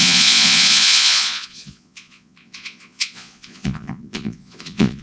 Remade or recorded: remade